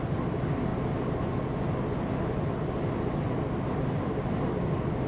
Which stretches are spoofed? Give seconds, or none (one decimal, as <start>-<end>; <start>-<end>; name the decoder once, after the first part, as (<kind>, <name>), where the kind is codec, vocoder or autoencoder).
0.0-0.7 (vocoder, BigVGAN v2); 3.8-5.1